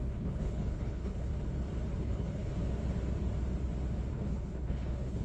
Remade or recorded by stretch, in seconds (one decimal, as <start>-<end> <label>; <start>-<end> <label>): 0.0-1.3 remade; 1.3-2.0 recorded; 2.0-2.5 remade; 2.5-4.1 recorded; 4.1-5.2 remade

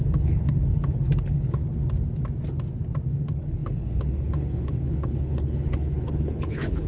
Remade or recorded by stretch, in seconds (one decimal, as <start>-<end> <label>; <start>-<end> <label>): 0.0-1.6 remade; 1.6-3.1 recorded; 3.1-6.9 remade